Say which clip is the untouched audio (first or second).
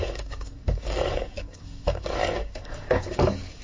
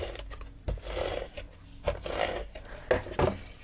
second